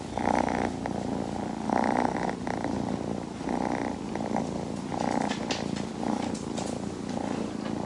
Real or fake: real